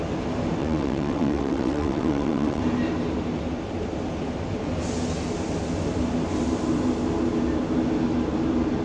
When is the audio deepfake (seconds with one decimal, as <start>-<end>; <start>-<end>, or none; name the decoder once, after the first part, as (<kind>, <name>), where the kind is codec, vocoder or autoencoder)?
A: 0.6-2.6 (vocoder, WaveNeXt)